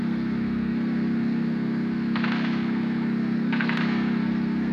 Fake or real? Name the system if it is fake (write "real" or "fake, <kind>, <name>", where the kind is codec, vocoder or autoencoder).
fake, codec, SNAC